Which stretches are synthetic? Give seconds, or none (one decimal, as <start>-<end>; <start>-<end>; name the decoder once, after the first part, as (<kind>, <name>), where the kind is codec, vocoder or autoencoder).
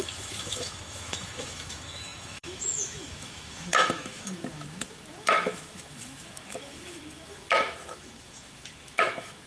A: 0.0-9.5 (autoencoder, DAC-VAE)